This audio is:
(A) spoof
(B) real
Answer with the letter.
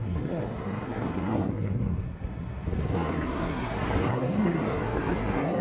A